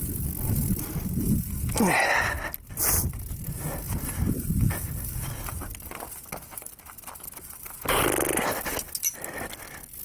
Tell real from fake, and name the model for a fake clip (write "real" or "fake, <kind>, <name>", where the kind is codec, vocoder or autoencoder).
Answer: real